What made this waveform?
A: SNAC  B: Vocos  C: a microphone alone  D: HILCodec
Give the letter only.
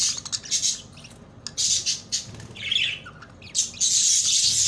C